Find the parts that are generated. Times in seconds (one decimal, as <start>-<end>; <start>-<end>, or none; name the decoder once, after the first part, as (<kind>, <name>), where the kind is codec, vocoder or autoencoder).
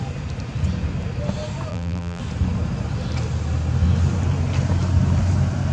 1.7-2.2 (vocoder, BigVGAN v2)